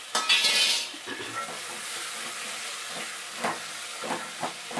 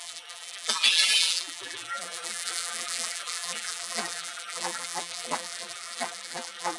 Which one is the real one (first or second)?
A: first